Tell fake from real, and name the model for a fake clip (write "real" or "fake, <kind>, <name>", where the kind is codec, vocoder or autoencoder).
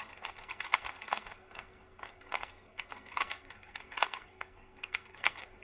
fake, codec, SNAC